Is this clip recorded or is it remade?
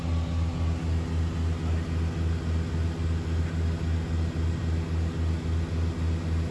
recorded